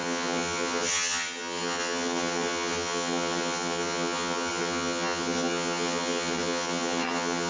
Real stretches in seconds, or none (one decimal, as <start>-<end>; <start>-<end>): none